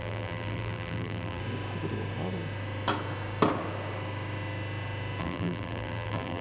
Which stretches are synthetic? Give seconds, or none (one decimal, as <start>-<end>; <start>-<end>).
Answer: 0.0-1.4; 5.2-6.4